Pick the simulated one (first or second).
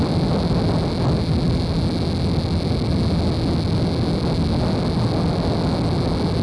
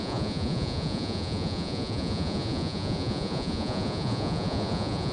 second